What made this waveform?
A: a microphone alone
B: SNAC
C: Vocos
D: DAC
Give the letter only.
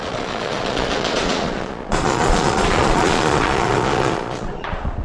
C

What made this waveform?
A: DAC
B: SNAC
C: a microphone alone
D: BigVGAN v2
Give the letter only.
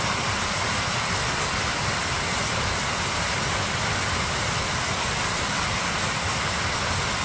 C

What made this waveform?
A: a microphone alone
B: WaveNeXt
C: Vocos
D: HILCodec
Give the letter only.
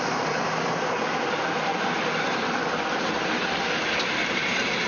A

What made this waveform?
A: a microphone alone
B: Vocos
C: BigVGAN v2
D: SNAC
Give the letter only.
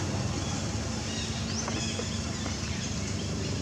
A